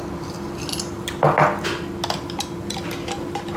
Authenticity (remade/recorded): recorded